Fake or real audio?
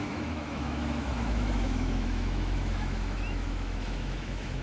fake